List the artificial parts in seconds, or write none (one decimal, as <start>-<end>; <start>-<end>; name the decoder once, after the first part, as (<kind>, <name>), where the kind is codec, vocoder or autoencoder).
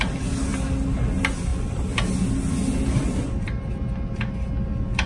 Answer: none